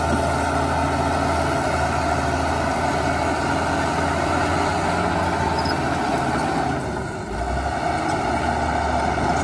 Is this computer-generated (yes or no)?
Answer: no